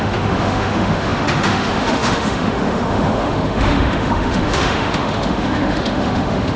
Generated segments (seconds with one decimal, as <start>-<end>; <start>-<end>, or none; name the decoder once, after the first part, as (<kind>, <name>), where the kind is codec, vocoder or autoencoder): 0.0-6.6 (autoencoder, DAC-VAE)